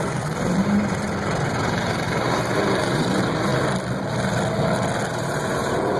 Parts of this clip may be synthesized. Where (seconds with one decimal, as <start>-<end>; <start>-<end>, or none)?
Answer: 0.0-3.5; 5.1-6.0